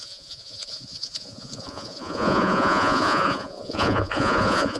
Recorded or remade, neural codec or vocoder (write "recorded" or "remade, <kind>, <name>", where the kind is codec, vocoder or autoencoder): remade, vocoder, Vocos